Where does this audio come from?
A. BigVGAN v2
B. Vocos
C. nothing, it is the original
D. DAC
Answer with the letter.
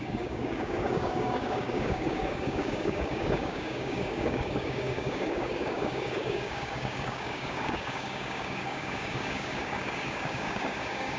D